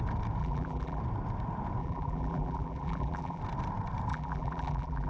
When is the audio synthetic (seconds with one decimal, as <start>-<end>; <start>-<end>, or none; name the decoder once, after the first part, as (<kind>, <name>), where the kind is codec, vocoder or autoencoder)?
0.4-1.0 (vocoder, BigVGAN v2); 1.8-3.4; 4.1-5.1